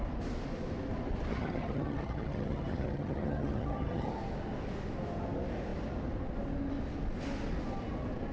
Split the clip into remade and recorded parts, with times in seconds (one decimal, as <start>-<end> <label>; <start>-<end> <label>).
0.0-1.3 recorded; 1.3-4.1 remade; 4.1-8.3 recorded